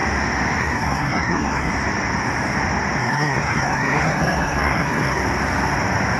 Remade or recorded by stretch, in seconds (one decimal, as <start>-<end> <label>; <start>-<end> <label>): 0.0-0.6 recorded; 0.6-1.7 remade; 1.7-3.0 recorded; 3.0-5.2 remade; 5.2-6.2 recorded

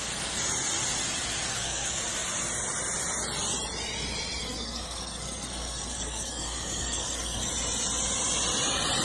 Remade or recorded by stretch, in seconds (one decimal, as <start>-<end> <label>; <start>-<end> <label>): 0.0-1.5 recorded; 1.5-2.0 remade; 2.0-4.4 recorded; 4.4-7.5 remade; 7.5-9.0 recorded

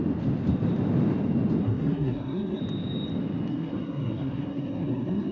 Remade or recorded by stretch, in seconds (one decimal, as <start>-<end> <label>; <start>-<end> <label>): 0.0-1.6 recorded; 1.6-2.6 remade; 2.6-3.5 recorded; 3.5-5.3 remade

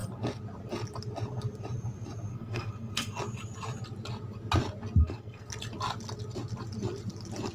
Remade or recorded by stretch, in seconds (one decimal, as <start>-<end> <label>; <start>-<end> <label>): 0.0-2.3 recorded; 2.3-3.2 remade; 3.2-5.0 recorded; 5.0-5.5 remade; 5.5-7.5 recorded

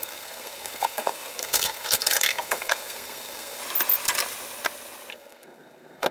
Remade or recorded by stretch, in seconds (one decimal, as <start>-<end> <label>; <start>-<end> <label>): 0.0-3.6 remade; 3.6-5.1 recorded; 5.1-6.1 remade

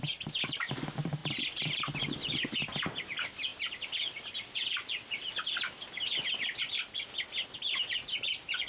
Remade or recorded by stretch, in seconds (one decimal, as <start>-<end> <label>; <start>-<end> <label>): 0.0-8.7 recorded

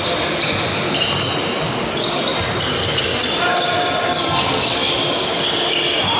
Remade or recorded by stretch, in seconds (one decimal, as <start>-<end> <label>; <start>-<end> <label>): 0.0-4.2 recorded; 4.2-4.9 remade; 4.9-6.2 recorded

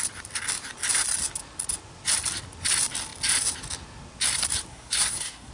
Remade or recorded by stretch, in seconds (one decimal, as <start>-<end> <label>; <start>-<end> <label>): 0.0-4.7 recorded; 4.7-5.5 remade